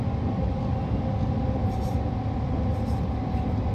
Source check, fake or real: real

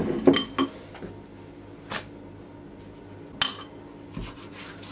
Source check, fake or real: real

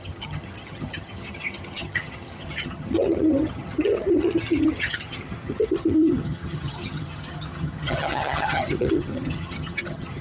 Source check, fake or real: fake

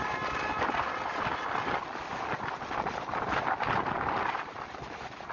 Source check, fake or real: real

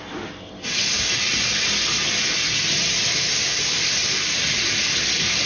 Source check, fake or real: real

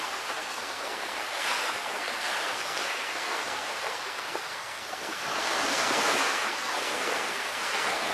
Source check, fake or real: fake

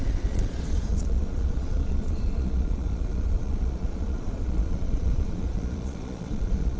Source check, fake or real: fake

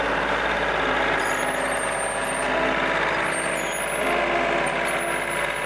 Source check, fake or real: real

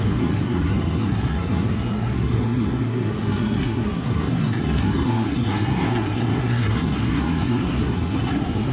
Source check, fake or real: fake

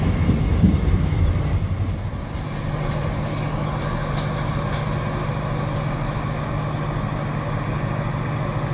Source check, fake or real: real